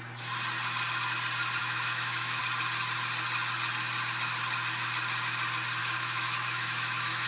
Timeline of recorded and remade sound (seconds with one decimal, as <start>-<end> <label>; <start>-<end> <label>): 0.0-1.6 recorded; 1.6-2.4 remade; 2.4-5.8 recorded; 5.8-7.3 remade